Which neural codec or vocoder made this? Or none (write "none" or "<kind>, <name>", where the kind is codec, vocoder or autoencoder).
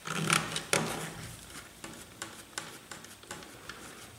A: none